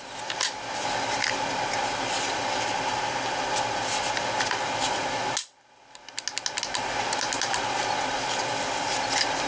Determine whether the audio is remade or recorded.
recorded